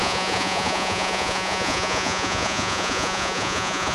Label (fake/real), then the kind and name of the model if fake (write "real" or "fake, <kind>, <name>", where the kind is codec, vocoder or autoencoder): fake, vocoder, Vocos